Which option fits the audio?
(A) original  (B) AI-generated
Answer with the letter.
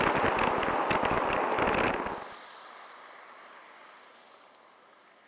A